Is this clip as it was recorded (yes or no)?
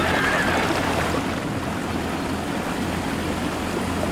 yes